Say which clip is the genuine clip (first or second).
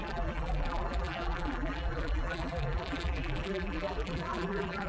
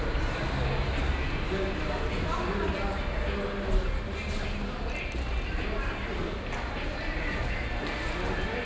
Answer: second